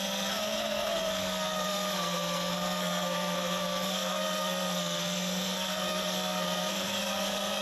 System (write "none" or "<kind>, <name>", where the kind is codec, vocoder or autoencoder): codec, SNAC